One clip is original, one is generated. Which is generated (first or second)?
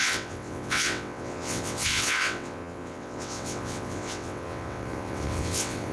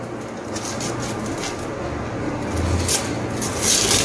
first